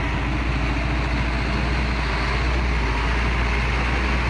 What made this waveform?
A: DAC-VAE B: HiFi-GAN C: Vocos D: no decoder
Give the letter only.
D